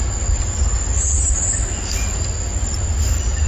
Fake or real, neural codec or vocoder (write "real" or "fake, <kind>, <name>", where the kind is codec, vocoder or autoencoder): real